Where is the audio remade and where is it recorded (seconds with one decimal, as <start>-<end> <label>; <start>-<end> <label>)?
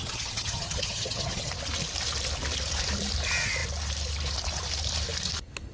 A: 0.0-1.5 remade; 1.5-5.7 recorded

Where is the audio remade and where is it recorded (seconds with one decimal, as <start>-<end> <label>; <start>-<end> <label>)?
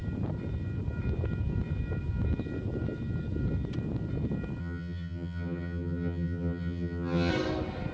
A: 0.0-4.6 recorded; 4.6-7.3 remade; 7.3-7.9 recorded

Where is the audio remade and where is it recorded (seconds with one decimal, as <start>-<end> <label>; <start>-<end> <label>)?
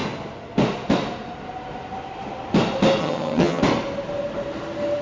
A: 0.0-3.0 recorded; 3.0-3.6 remade; 3.6-5.0 recorded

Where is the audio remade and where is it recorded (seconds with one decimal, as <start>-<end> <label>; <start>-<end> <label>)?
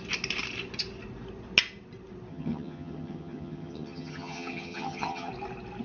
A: 0.0-2.3 recorded; 2.3-5.3 remade; 5.3-5.8 recorded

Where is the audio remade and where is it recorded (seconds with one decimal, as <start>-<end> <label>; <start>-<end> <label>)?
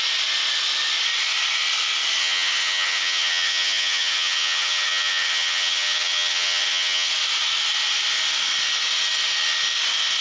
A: 0.0-2.2 recorded; 2.2-7.1 remade; 7.1-10.2 recorded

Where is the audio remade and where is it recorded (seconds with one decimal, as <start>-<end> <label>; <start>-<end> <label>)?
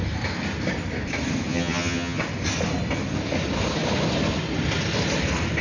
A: 0.0-1.5 recorded; 1.5-2.2 remade; 2.2-5.6 recorded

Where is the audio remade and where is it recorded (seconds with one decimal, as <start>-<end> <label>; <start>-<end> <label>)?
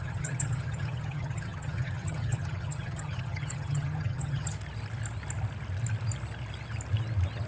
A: 0.0-4.5 remade; 4.5-7.5 recorded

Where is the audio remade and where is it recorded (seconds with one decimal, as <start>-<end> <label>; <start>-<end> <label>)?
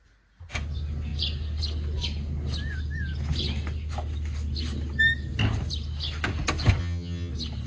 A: 0.0-6.8 recorded; 6.8-7.3 remade; 7.3-7.7 recorded